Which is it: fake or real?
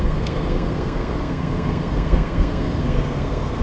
fake